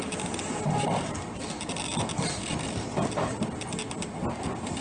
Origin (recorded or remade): recorded